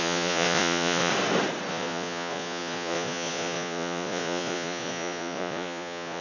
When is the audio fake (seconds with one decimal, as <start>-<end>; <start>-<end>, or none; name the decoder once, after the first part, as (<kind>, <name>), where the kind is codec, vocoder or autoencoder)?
0.0-1.1 (vocoder, Vocos); 1.7-6.2